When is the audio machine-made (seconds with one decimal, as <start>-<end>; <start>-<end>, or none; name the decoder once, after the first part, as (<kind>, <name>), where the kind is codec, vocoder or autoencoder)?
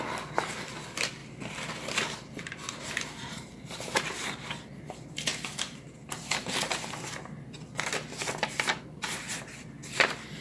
5.3-6.3 (vocoder, BigVGAN v2)